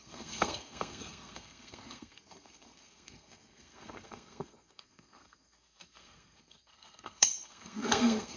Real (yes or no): no